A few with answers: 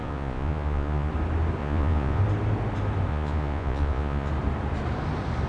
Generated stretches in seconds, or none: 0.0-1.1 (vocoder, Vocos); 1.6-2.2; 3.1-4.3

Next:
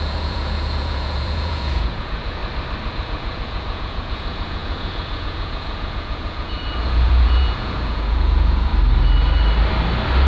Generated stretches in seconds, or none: 0.0-2.4 (vocoder, Vocos); 2.9-8.7